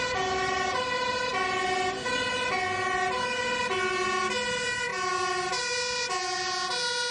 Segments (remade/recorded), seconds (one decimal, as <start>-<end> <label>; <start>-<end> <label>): 0.0-7.1 recorded

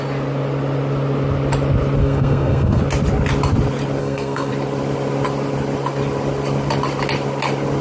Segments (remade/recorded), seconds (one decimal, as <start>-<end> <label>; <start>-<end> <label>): 0.0-2.0 recorded; 2.0-2.8 remade; 2.8-4.0 recorded; 4.0-4.5 remade; 4.5-7.8 recorded

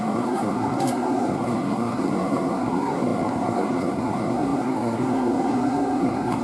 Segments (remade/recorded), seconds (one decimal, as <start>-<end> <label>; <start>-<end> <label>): 0.0-6.4 remade

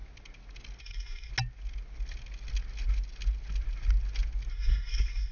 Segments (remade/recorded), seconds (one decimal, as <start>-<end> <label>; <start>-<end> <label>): 0.0-0.8 recorded; 0.8-1.3 remade; 1.3-4.5 recorded; 4.5-5.3 remade

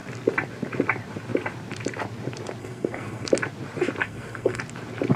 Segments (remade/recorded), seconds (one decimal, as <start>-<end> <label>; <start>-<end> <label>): 0.0-2.6 recorded; 2.6-3.3 remade; 3.3-4.0 recorded; 4.0-4.6 remade; 4.6-5.2 recorded